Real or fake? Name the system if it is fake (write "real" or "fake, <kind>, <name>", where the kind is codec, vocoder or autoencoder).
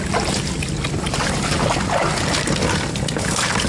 real